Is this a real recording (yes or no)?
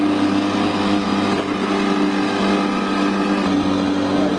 yes